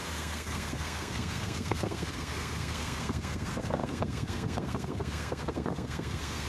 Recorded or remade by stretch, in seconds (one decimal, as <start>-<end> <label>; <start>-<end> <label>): 0.0-6.5 remade